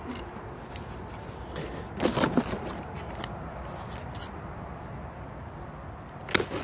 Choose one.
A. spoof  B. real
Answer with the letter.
B